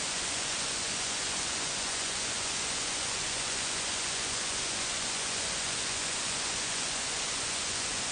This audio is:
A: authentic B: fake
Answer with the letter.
B